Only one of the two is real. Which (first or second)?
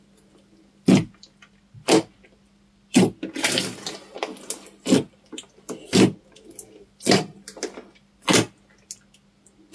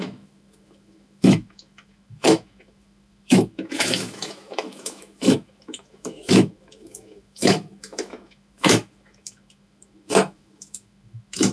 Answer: first